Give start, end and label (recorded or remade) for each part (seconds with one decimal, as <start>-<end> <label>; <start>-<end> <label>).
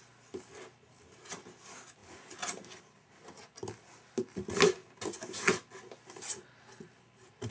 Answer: 0.0-7.5 recorded